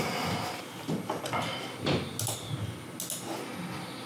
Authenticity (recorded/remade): recorded